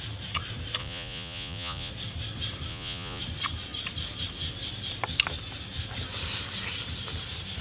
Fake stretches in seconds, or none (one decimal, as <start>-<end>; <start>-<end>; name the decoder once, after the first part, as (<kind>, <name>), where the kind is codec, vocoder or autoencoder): 0.8-1.9 (vocoder, Vocos); 2.7-3.2